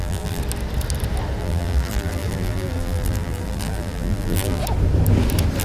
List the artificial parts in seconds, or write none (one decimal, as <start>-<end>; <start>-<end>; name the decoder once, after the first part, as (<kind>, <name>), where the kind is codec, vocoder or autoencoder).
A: 0.0-0.4 (vocoder, BigVGAN v2); 1.4-4.6